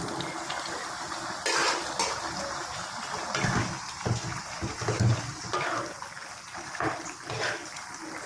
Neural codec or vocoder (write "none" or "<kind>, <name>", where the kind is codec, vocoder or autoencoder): none